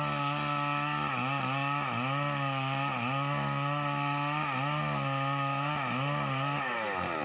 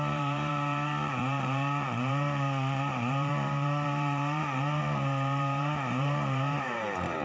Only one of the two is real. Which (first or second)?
first